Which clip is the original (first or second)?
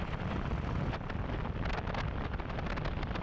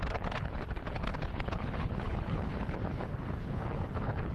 first